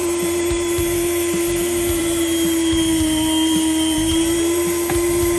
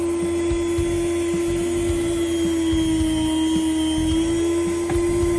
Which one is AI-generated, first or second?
first